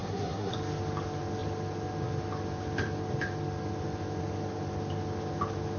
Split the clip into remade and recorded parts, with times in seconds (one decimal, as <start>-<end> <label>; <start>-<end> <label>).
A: 0.0-0.5 remade; 0.5-5.8 recorded